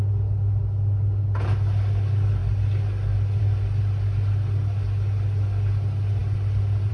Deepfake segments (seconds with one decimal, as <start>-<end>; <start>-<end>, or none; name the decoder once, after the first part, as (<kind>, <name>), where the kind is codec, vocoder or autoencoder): none